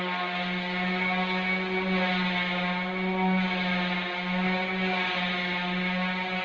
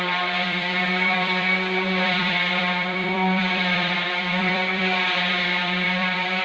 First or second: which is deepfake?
second